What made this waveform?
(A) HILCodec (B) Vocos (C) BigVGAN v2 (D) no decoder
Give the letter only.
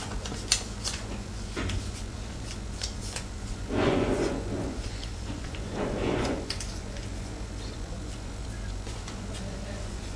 B